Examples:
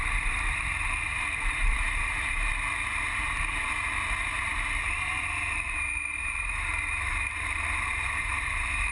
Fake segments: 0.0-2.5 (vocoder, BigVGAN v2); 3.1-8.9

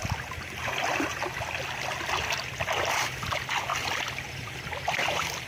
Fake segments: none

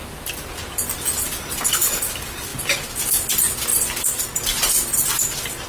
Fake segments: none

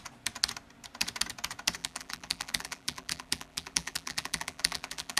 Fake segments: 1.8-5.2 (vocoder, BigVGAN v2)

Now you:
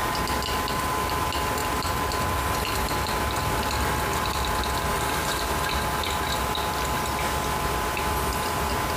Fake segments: 4.9-5.4 (vocoder, BigVGAN v2)